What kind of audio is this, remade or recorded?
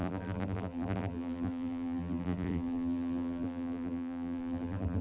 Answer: remade